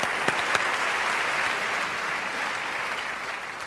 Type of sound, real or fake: real